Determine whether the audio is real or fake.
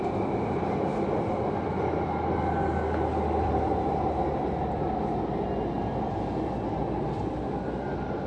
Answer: real